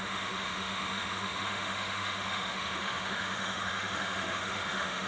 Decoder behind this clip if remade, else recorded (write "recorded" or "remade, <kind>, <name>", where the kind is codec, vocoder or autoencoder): remade, autoencoder, DAC-VAE